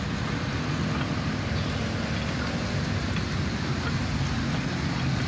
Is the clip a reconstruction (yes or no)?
no